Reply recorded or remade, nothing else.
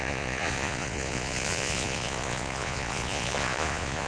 remade